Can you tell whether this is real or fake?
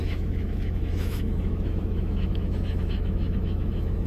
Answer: fake